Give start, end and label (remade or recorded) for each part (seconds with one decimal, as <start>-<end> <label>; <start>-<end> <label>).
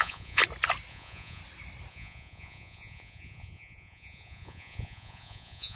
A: 0.0-0.4 remade; 0.4-0.9 recorded; 0.9-1.4 remade; 1.4-1.9 recorded; 1.9-5.8 remade